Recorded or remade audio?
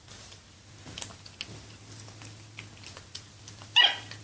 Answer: recorded